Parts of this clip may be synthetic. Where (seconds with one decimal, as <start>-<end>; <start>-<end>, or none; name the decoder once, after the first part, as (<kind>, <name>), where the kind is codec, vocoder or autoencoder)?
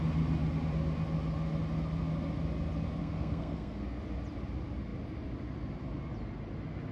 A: 3.0-4.0 (codec, SNAC)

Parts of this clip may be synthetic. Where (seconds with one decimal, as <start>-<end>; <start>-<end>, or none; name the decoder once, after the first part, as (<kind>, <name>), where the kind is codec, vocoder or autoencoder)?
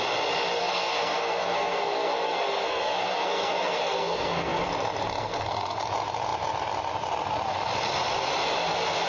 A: 0.6-4.7 (codec, SNAC); 5.2-5.8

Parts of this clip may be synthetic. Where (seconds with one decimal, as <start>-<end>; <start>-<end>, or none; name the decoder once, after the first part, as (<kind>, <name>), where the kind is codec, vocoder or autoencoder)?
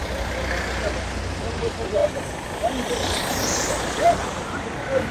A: 2.0-2.9 (vocoder, BigVGAN v2)